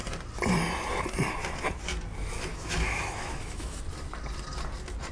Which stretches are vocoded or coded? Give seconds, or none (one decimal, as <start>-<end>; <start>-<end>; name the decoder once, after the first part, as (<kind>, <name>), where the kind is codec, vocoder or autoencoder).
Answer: 2.5-3.8 (autoencoder, DAC-VAE)